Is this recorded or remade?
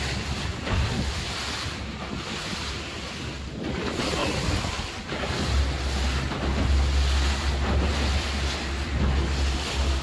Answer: recorded